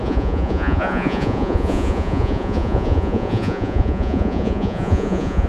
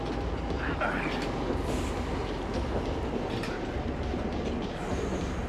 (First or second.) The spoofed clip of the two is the first